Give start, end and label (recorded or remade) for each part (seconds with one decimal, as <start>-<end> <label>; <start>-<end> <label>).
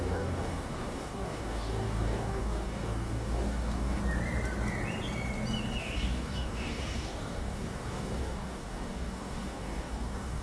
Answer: 0.0-4.0 remade; 4.0-5.8 recorded; 5.8-10.4 remade